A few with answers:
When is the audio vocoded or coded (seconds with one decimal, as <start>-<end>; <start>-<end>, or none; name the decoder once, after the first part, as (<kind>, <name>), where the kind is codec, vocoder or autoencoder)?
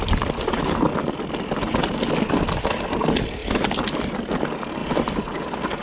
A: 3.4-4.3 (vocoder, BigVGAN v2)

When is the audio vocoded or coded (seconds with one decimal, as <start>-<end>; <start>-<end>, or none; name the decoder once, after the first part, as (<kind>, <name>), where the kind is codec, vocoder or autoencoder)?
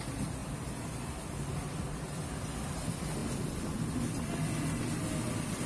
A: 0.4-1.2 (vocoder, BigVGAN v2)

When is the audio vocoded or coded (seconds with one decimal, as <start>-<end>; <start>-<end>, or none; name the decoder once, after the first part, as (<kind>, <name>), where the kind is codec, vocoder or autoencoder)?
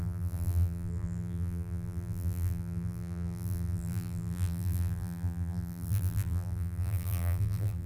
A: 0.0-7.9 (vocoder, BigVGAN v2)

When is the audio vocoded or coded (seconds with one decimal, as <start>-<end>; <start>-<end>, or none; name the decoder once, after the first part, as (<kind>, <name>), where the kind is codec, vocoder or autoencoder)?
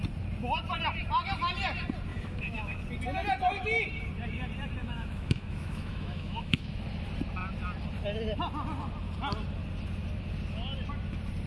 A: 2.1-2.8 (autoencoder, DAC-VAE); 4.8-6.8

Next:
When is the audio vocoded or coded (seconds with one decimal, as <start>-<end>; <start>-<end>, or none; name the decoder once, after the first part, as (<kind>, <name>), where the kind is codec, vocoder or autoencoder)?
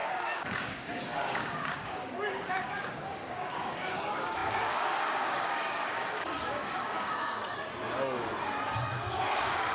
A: 0.0-7.4 (codec, DAC); 8.8-9.7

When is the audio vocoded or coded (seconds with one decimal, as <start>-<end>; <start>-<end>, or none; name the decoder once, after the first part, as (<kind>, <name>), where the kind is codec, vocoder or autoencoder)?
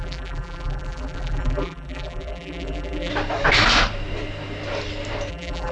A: 0.0-3.1 (vocoder, BigVGAN v2); 5.3-5.7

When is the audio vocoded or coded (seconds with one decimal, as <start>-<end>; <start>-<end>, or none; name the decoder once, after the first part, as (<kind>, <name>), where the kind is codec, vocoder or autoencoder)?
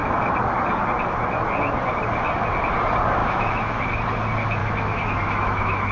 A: 3.2-3.8 (autoencoder, DAC-VAE); 4.6-5.9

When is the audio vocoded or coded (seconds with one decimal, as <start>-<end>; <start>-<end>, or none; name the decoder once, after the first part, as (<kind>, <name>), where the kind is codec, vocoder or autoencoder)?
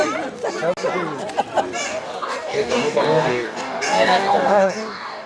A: 1.9-5.3 (codec, DAC)